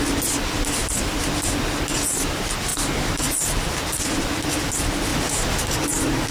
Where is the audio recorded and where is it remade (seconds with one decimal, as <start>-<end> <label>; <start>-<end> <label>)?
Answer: 0.0-2.7 recorded; 2.7-3.3 remade; 3.3-5.1 recorded; 5.1-5.6 remade; 5.6-6.3 recorded